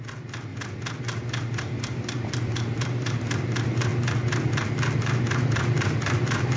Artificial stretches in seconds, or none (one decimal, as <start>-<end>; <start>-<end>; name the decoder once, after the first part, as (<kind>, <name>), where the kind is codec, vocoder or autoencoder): 0.0-0.5 (vocoder, BigVGAN v2); 1.0-3.9; 5.0-6.6